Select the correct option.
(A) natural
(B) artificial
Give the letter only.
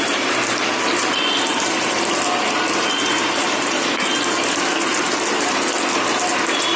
A